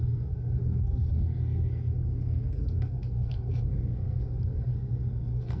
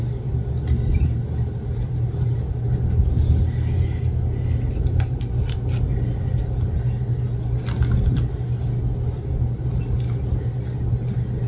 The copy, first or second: first